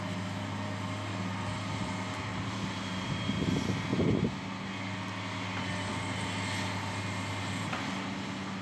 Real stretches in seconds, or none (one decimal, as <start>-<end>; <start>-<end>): 0.0-2.3; 3.5-8.6